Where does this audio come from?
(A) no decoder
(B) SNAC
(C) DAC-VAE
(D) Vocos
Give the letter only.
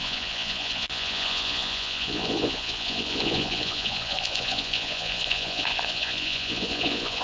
D